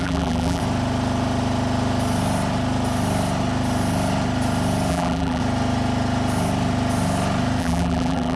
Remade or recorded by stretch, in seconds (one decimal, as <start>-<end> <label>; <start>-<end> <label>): 0.0-0.6 remade; 0.6-4.9 recorded; 4.9-5.4 remade; 5.4-7.6 recorded; 7.6-8.4 remade